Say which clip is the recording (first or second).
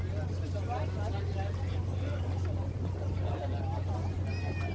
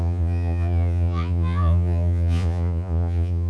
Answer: first